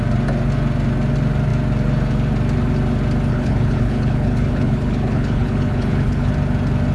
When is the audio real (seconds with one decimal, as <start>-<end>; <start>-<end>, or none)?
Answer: 0.0-3.3; 6.3-6.9

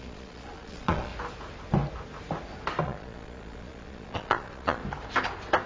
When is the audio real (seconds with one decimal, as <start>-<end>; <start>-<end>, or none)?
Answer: 1.1-2.8; 4.8-5.7

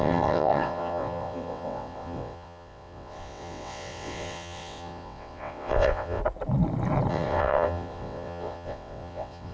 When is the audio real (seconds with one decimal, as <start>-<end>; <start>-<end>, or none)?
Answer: 6.2-7.1